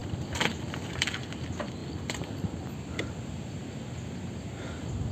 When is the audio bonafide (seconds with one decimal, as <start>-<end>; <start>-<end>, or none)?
1.3-5.1